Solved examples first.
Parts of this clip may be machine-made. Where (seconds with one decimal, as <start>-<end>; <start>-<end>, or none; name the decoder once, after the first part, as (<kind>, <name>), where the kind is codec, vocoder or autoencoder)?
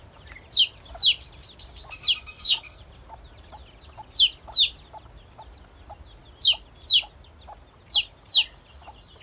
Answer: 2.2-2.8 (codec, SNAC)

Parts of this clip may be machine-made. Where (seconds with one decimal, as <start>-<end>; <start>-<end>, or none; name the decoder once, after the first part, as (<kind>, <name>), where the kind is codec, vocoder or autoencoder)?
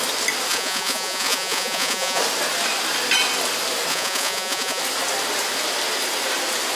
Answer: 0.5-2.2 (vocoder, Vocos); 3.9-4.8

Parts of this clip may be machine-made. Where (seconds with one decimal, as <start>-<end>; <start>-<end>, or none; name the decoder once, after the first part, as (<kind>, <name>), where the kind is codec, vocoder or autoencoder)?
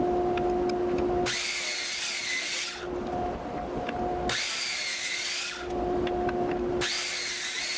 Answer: none